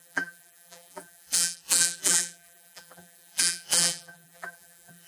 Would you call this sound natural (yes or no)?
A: no